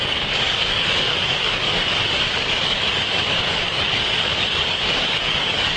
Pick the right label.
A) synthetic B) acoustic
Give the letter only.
A